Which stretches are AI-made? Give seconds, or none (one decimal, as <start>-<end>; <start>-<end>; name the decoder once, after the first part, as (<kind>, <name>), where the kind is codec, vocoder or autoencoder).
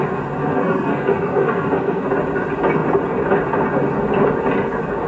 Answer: 0.4-2.1 (codec, SNAC)